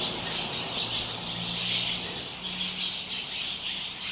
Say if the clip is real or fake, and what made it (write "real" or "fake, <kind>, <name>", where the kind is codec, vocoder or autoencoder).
real